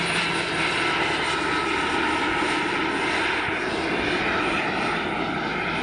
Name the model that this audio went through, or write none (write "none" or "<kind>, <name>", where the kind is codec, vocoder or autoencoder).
none